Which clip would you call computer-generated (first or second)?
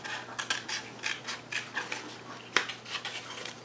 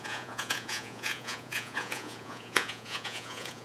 second